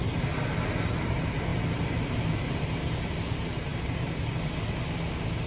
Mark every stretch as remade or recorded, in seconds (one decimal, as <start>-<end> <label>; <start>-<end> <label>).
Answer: 0.0-1.5 recorded; 1.5-2.2 remade; 2.2-3.7 recorded; 3.7-4.3 remade; 4.3-5.5 recorded